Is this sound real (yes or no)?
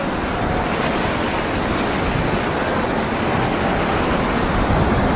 yes